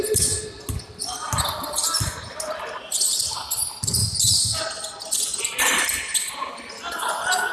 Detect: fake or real real